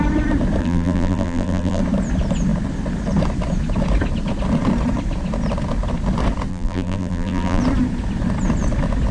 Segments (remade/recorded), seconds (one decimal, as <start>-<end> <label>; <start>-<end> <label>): 0.0-0.6 recorded; 0.6-1.8 remade; 1.8-6.5 recorded; 6.5-7.6 remade; 7.6-9.1 recorded